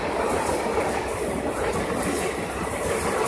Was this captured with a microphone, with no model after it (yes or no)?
yes